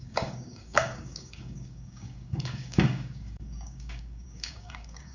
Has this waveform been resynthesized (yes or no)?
yes